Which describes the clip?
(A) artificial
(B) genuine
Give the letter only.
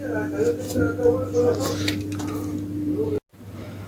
B